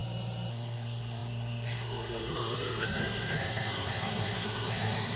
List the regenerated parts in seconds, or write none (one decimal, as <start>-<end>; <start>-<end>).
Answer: 0.5-5.2